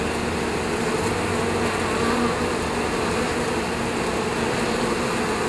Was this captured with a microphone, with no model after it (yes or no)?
yes